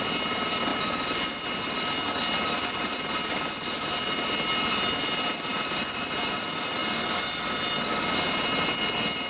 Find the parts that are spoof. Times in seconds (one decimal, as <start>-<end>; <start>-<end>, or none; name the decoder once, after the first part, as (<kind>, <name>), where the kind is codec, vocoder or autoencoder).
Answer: none